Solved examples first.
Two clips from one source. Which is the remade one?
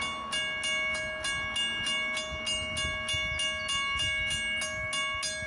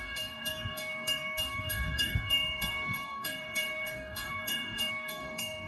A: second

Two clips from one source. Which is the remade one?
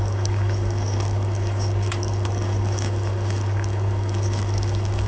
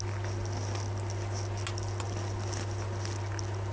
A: first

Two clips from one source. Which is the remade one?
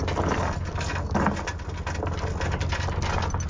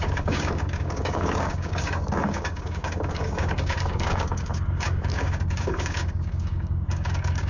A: second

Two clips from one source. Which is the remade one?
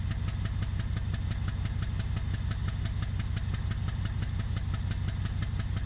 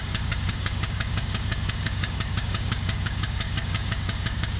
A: second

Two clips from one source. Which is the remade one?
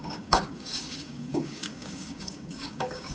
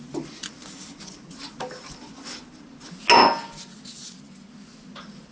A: first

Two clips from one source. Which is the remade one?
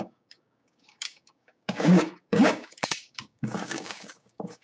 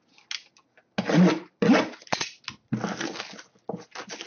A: first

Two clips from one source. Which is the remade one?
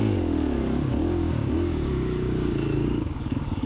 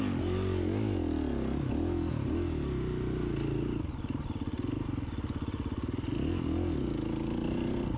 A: first